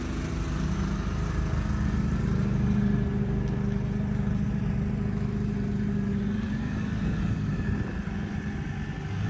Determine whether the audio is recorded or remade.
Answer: recorded